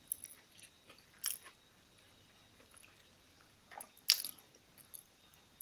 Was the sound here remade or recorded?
recorded